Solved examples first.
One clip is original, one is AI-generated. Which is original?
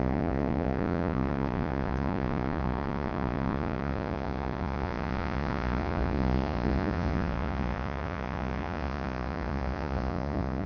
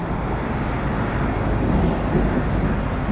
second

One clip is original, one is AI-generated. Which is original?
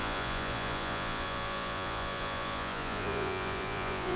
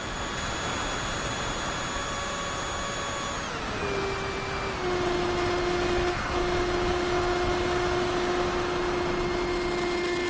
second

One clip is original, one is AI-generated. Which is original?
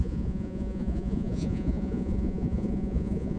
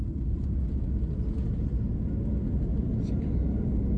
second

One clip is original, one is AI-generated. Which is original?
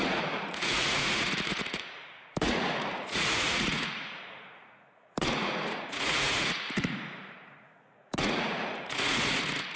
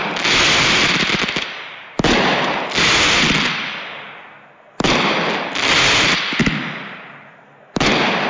second